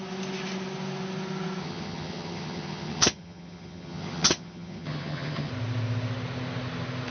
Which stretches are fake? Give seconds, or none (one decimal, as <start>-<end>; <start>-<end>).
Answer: 1.6-5.5